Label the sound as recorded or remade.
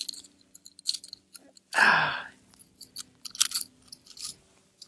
recorded